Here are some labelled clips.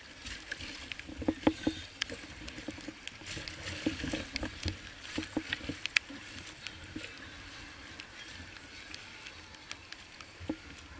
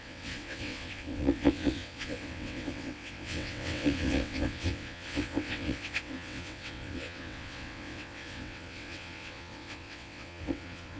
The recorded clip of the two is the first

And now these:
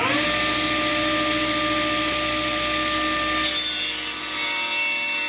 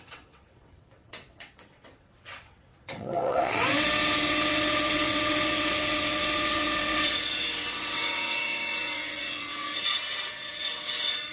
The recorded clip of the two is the first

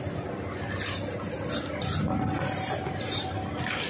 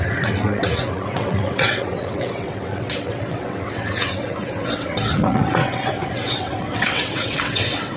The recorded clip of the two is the first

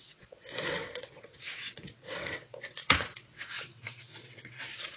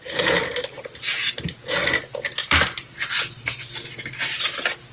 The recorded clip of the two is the second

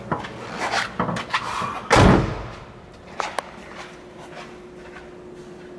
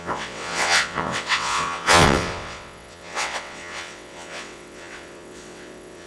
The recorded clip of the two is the first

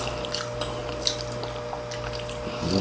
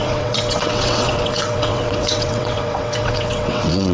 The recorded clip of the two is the first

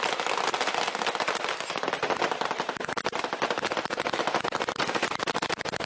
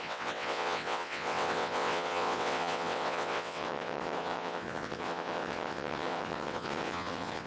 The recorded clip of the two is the first